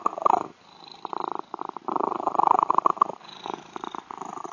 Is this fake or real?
fake